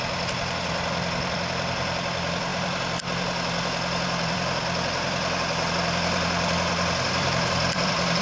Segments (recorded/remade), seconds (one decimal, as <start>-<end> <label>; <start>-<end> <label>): 0.0-8.2 remade